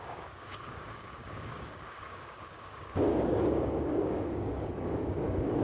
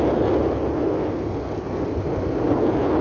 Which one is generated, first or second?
first